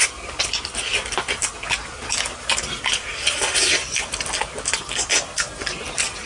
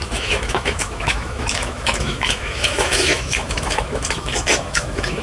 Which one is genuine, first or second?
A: first